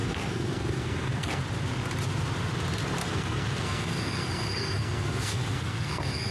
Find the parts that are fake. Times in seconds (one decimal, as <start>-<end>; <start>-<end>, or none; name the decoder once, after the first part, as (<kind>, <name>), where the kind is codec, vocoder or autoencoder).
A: 0.0-1.4 (codec, SNAC); 3.0-6.3